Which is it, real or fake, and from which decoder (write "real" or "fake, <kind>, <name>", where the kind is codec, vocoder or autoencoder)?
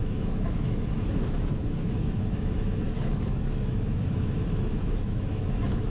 fake, autoencoder, DAC-VAE